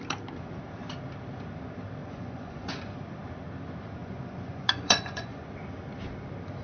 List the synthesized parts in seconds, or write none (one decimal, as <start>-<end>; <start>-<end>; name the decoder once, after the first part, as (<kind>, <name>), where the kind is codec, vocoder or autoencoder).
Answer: 2.0-2.9 (vocoder, Vocos); 4.0-5.5